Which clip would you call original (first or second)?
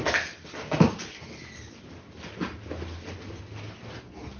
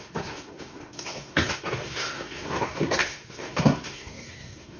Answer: first